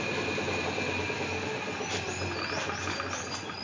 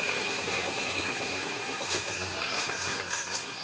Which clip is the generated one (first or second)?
second